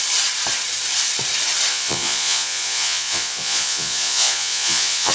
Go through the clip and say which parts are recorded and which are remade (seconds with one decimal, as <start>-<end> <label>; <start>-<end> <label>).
0.0-1.7 recorded; 1.7-5.1 remade